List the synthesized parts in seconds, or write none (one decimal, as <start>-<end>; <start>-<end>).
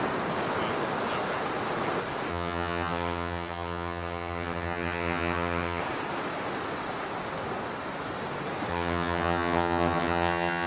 2.3-5.8; 8.7-10.7